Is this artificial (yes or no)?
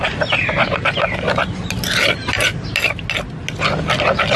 no